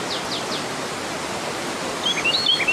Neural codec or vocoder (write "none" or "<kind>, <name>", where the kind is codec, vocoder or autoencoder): none